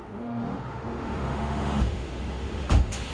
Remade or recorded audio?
remade